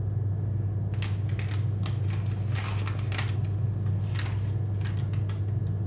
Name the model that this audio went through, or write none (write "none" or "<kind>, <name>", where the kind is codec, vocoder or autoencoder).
none